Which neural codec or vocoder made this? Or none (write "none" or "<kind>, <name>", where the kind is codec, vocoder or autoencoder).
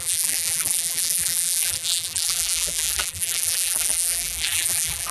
vocoder, BigVGAN v2